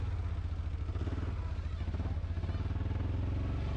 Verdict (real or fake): real